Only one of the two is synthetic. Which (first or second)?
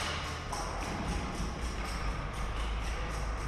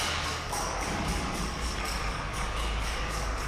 second